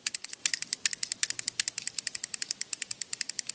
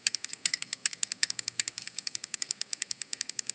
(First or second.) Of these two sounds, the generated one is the second